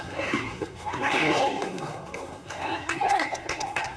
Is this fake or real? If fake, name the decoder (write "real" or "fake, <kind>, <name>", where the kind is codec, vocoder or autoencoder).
fake, codec, SNAC